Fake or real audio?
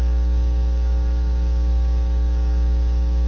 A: fake